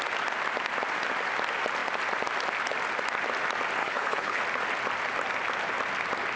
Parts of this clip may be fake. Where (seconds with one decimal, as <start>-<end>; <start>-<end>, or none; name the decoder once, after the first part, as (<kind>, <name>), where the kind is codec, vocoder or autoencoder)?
3.8-4.4 (codec, HILCodec)